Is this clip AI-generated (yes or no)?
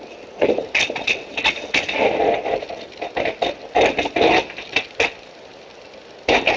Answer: no